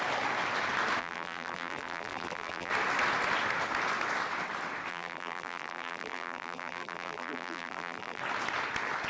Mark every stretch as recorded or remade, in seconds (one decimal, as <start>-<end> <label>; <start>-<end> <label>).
0.0-1.0 recorded; 1.0-2.7 remade; 2.7-4.9 recorded; 4.9-8.2 remade; 8.2-9.1 recorded